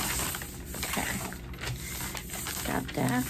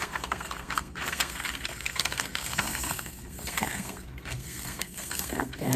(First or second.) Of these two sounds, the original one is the first